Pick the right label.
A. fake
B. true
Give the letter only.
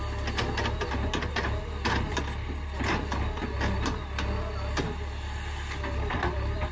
B